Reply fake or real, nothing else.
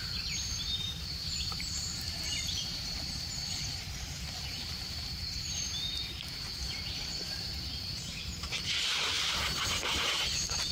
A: fake